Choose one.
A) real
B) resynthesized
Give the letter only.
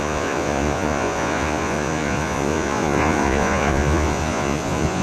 B